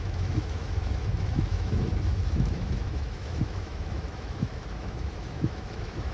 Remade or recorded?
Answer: remade